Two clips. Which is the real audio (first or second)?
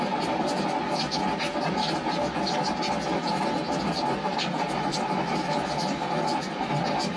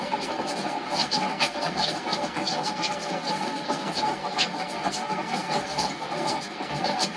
first